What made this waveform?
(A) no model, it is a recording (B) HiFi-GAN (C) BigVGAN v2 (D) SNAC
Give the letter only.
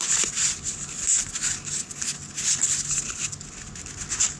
A